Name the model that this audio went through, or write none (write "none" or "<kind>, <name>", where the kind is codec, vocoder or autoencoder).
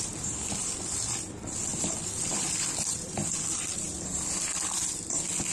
vocoder, BigVGAN v2